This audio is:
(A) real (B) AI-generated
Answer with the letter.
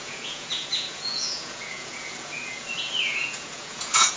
B